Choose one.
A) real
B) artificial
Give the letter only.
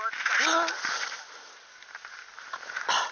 A